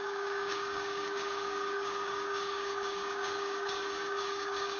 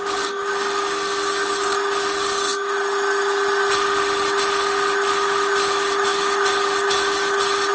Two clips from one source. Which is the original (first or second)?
second